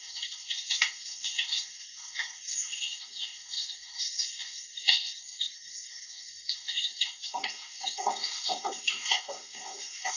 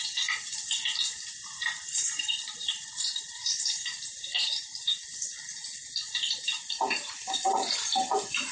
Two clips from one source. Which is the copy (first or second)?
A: first